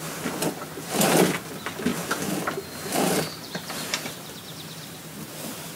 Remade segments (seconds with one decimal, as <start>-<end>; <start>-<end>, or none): 1.9-4.0; 4.5-5.8